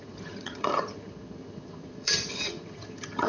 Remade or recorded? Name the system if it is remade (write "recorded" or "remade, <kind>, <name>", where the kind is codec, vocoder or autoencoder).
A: remade, vocoder, HiFi-GAN